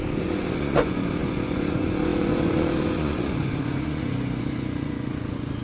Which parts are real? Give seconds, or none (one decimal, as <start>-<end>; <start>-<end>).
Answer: none